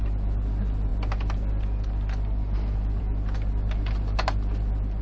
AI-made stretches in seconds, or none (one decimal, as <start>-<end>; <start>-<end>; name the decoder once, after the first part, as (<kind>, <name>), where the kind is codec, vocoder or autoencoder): none

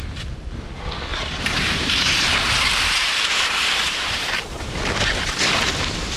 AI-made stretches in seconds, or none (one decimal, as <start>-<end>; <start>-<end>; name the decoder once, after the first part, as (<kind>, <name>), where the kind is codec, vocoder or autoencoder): 1.1-4.8 (vocoder, BigVGAN v2)